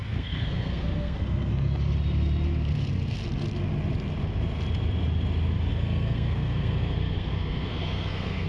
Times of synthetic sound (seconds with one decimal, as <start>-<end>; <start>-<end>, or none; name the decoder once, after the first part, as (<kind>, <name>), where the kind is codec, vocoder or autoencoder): 0.0-1.5 (codec, SNAC); 5.7-8.5